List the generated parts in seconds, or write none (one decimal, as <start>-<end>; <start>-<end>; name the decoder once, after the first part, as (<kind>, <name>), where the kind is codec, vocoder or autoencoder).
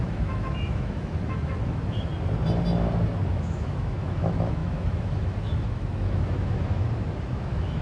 0.0-2.1 (autoencoder, DAC-VAE); 3.3-7.8